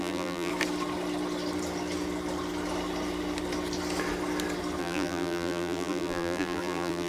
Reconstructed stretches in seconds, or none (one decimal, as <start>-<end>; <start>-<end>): 0.0-0.5; 4.8-7.1